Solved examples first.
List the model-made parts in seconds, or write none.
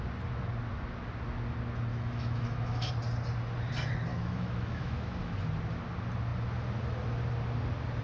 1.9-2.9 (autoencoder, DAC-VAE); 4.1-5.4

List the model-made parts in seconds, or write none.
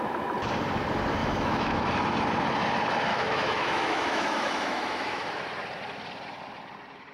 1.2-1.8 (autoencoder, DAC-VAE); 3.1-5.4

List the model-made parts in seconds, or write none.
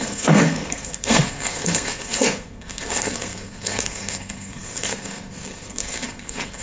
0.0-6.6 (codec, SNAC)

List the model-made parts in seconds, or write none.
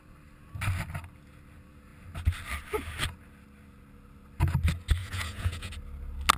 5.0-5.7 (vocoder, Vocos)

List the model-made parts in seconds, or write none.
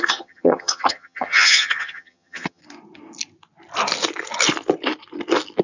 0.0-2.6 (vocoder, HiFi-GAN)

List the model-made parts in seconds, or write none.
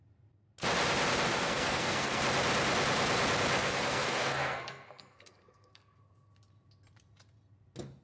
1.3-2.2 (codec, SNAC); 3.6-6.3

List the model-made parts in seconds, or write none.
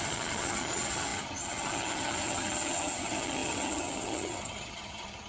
0.0-5.3 (vocoder, HiFi-GAN)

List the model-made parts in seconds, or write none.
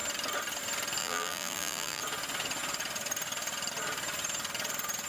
1.0-2.0 (vocoder, BigVGAN v2)